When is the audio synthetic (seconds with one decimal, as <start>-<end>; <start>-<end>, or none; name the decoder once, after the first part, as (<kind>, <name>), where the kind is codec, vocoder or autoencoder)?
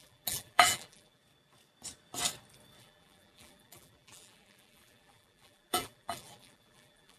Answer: 0.0-1.2 (vocoder, BigVGAN v2); 2.8-7.2